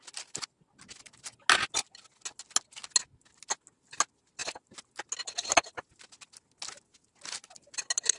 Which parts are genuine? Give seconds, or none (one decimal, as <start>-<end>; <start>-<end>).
0.0-8.2